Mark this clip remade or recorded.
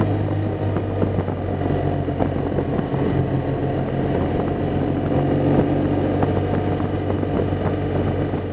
recorded